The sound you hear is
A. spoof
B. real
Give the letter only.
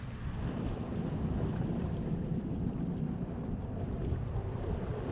A